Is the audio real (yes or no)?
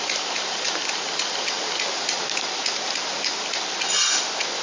yes